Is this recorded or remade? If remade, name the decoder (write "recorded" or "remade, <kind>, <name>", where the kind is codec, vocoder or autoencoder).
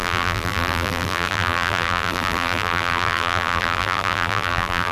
remade, vocoder, BigVGAN v2